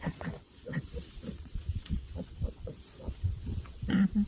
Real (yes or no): no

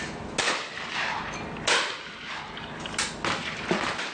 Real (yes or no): yes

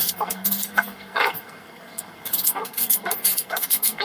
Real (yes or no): no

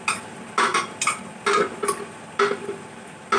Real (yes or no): yes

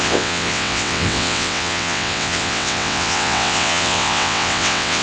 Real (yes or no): no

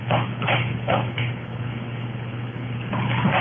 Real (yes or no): no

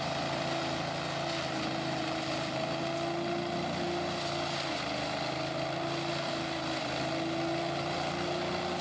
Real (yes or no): yes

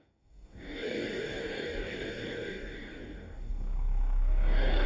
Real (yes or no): no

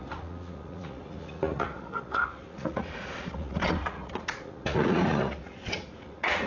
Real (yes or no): no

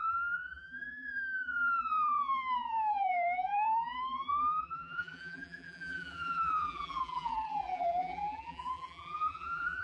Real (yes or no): no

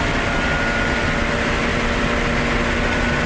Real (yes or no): yes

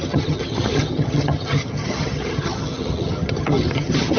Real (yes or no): no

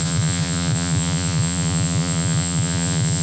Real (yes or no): no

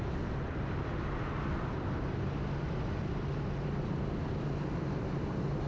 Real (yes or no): yes